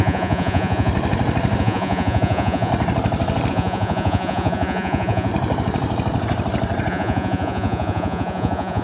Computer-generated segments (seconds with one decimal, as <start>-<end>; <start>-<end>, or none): 0.0-0.9; 1.6-2.7; 3.5-5.3; 6.9-8.8

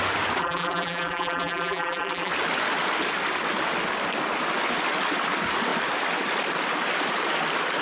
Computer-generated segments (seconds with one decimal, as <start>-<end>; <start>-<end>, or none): 0.4-2.3

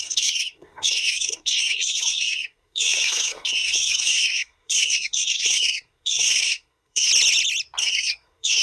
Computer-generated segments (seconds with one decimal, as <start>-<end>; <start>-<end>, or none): 0.0-7.1; 7.8-8.6